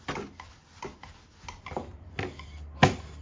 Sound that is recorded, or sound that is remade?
recorded